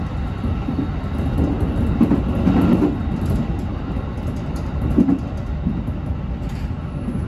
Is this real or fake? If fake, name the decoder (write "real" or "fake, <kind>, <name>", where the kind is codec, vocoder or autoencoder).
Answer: real